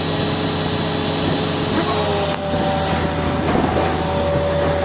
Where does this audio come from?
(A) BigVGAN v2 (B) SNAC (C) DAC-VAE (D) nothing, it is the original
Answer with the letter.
D